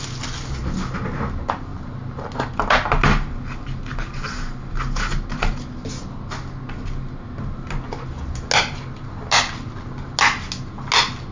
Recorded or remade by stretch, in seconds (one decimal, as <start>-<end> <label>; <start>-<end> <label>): 0.0-11.3 recorded